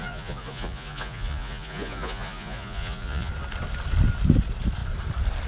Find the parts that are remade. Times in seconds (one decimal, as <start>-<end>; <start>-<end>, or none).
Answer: 0.0-3.3